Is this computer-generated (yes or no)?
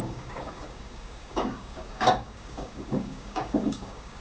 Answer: yes